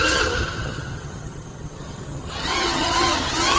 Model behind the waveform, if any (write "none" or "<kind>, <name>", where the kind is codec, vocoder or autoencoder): vocoder, HiFi-GAN